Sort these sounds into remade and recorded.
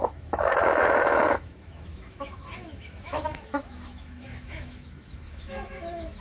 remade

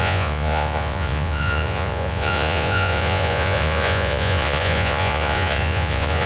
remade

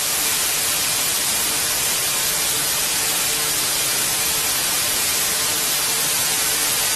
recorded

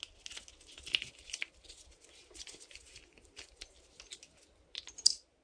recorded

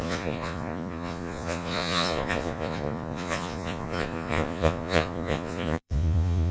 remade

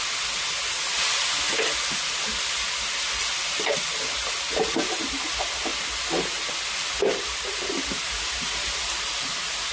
recorded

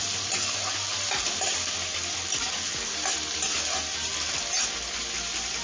recorded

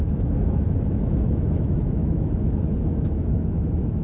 remade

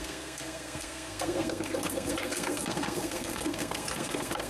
remade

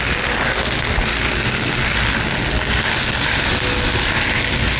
recorded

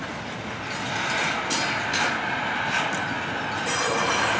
recorded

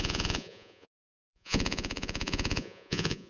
remade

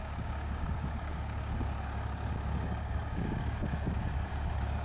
remade